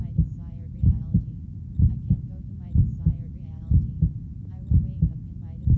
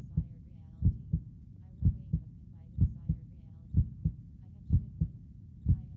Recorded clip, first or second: second